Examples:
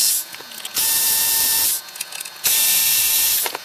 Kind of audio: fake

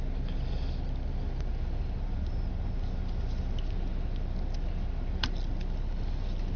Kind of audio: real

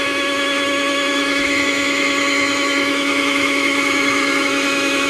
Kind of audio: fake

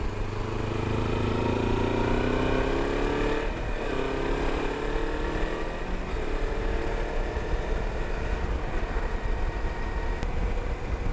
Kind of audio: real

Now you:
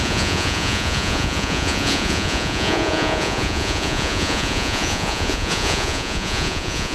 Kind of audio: fake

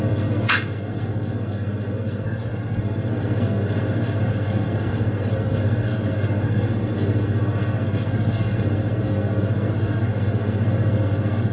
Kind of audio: fake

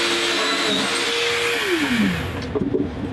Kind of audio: real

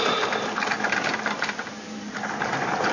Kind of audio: real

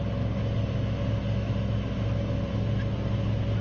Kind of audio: real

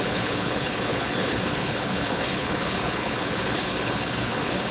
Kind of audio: fake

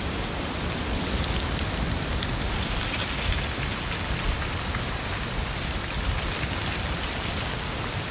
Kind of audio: fake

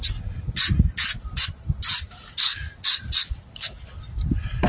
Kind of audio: real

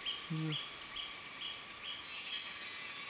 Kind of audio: real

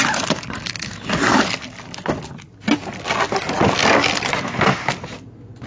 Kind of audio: real